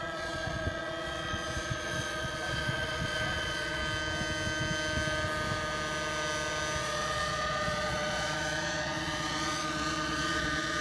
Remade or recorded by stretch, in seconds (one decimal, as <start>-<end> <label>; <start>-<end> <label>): 0.0-3.8 remade; 3.8-6.8 recorded; 6.8-10.8 remade

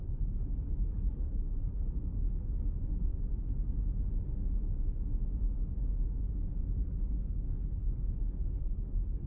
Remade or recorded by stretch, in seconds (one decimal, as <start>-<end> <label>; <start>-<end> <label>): 0.0-3.1 remade; 3.1-6.8 recorded; 6.8-9.3 remade

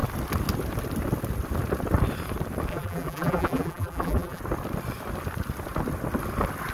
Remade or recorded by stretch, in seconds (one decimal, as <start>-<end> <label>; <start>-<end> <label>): 0.0-2.7 recorded; 2.7-4.4 remade; 4.4-6.7 recorded

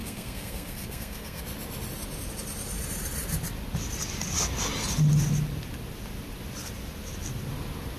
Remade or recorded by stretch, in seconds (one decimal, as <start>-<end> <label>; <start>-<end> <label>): 0.0-1.4 remade; 1.4-8.0 recorded

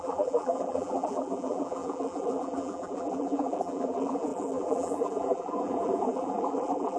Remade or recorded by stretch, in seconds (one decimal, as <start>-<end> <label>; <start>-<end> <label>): 0.0-7.0 remade

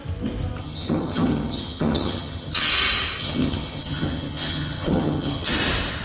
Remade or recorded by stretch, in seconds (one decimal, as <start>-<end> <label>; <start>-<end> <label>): 0.0-0.6 recorded; 0.6-2.7 remade; 2.7-3.2 recorded; 3.2-5.5 remade; 5.5-6.0 recorded

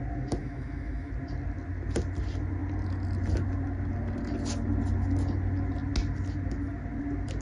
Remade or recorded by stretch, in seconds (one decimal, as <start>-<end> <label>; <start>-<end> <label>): 0.0-0.4 recorded; 0.4-1.1 remade; 1.1-7.4 recorded